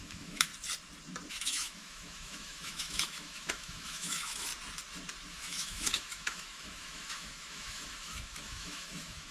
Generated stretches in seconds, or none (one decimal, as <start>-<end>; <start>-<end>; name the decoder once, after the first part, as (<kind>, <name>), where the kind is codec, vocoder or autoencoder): 0.0-0.5 (autoencoder, DAC-VAE); 1.3-4.5; 5.3-9.3

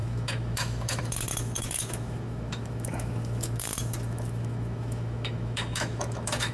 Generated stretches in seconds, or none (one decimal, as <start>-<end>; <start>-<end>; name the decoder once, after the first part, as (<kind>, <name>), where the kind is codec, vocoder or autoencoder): 0.0-6.5 (autoencoder, DAC-VAE)

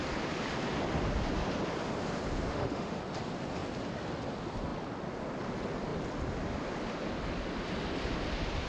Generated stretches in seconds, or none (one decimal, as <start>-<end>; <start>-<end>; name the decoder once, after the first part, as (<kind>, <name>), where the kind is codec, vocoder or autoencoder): 2.5-3.0 (autoencoder, DAC-VAE)

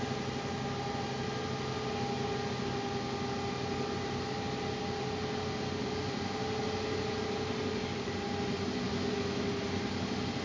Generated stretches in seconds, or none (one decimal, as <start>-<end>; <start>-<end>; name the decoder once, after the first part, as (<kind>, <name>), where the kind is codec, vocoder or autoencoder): 8.9-9.5 (autoencoder, DAC-VAE)

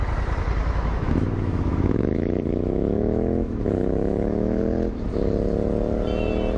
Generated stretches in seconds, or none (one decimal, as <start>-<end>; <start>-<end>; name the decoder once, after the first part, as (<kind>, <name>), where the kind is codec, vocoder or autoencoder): 0.6-4.6 (autoencoder, DAC-VAE)

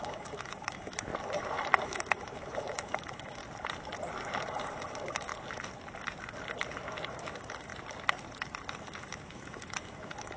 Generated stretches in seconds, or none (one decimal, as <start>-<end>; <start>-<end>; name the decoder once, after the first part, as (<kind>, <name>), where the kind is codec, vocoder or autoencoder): 0.0-1.1 (autoencoder, DAC-VAE); 1.8-3.4; 4.5-5.3; 7.1-7.7; 8.8-10.4